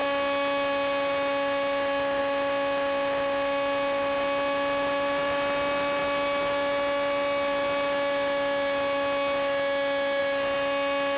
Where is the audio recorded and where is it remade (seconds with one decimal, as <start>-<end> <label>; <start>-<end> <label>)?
0.0-11.2 recorded